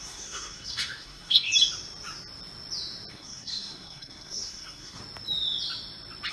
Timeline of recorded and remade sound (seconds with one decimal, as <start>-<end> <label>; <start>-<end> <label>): 0.0-1.5 remade; 1.5-3.1 recorded; 3.1-5.0 remade; 5.0-6.3 recorded